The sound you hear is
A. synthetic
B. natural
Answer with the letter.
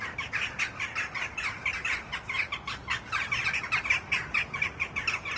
B